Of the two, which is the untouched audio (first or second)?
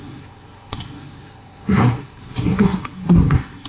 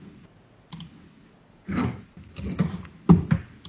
second